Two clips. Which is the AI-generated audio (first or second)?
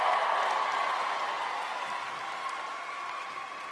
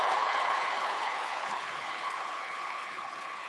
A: second